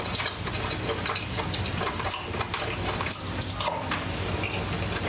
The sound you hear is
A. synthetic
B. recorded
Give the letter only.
B